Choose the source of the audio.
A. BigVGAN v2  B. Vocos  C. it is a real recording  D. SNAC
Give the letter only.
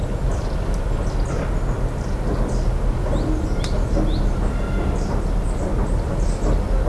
C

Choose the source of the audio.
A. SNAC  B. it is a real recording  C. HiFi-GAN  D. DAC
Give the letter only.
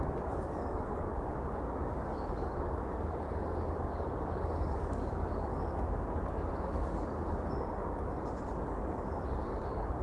D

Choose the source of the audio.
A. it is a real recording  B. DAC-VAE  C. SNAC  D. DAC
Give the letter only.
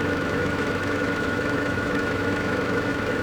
B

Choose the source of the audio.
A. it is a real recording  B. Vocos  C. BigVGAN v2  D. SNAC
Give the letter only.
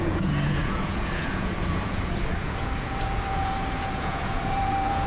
B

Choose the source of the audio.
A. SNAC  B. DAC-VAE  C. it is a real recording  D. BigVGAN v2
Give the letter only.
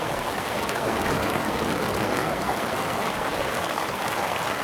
A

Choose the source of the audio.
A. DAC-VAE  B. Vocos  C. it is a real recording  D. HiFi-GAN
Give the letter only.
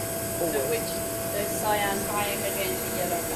C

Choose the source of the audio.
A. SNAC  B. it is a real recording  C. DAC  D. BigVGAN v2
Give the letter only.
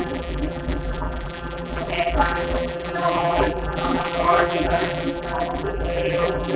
D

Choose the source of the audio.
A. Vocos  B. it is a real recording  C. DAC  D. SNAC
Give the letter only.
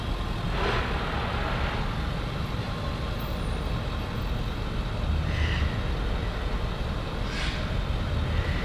B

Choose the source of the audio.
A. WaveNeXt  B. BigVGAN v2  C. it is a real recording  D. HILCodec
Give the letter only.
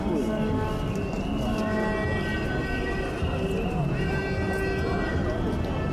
C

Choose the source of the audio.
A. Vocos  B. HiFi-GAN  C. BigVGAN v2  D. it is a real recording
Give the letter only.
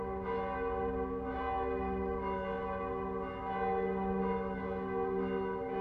D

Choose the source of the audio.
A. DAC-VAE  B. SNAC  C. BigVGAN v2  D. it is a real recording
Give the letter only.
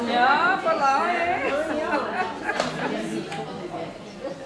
D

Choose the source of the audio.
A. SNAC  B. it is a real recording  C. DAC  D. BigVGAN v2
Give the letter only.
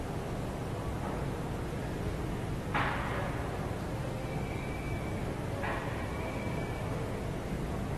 B